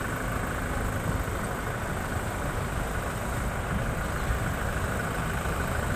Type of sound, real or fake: real